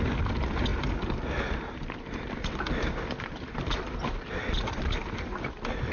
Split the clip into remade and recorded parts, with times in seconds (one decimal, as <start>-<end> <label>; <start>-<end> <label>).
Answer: 0.0-5.9 recorded